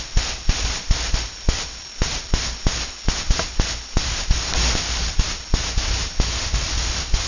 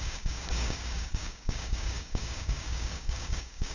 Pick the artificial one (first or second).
second